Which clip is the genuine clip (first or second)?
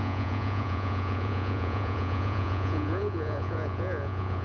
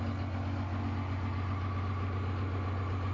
second